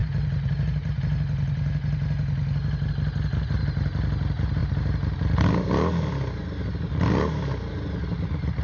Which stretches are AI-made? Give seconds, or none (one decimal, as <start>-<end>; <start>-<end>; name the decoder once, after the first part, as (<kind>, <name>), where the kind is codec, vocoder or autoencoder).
none